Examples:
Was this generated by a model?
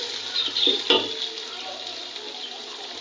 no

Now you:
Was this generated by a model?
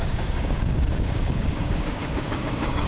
yes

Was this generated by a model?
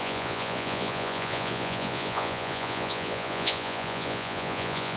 yes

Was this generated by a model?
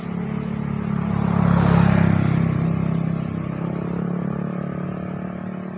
no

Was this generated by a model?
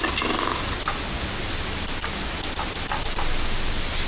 no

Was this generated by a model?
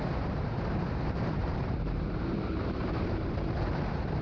yes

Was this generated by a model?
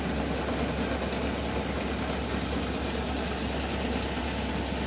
no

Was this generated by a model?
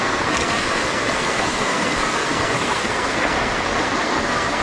yes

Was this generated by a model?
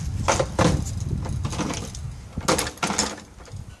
no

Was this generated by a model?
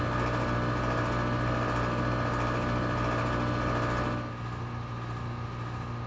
no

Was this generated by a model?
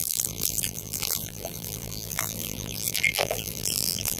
yes